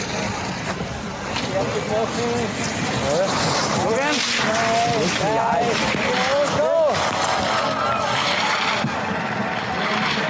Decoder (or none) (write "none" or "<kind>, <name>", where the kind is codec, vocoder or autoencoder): none